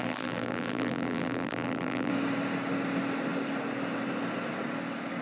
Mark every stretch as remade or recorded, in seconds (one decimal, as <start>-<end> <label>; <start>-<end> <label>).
0.0-2.1 remade; 2.1-5.2 recorded